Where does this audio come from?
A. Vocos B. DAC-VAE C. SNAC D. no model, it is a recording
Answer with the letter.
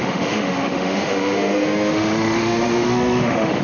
B